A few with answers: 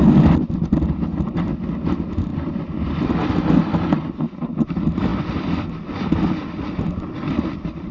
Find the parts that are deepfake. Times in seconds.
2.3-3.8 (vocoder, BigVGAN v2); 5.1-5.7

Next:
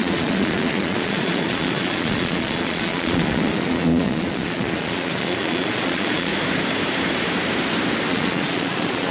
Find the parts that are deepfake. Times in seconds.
0.0-6.3 (vocoder, Vocos); 8.1-9.1